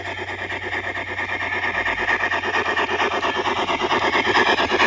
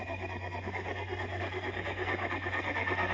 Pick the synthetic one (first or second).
second